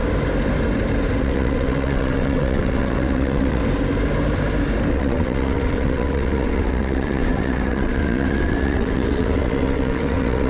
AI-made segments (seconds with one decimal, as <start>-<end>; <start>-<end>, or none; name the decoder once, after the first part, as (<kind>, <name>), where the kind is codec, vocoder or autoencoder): 1.2-3.6 (vocoder, WaveNeXt); 4.9-10.5

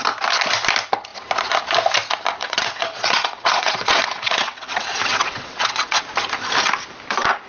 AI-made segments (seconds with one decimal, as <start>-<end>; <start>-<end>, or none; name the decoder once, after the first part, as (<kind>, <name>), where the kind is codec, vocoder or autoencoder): 2.4-6.0 (vocoder, WaveNeXt)

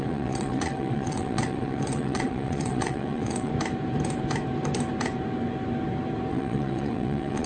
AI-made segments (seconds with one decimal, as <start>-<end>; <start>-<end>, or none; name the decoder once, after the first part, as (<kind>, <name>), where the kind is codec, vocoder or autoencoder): 0.0-3.5 (vocoder, WaveNeXt); 6.3-7.5

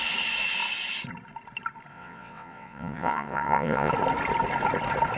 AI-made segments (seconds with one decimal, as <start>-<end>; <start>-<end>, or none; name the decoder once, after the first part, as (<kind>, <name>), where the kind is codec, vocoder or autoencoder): 1.9-3.9 (vocoder, WaveNeXt)